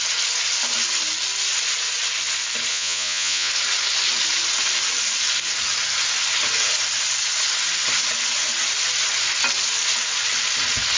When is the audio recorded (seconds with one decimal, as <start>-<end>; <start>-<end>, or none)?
0.0-2.7; 3.5-11.0